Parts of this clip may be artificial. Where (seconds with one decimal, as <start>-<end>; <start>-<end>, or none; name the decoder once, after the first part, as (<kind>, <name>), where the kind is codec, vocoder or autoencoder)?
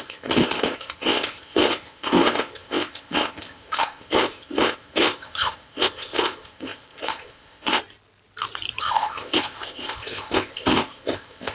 0.0-7.8 (codec, ZipCodec); 8.8-11.5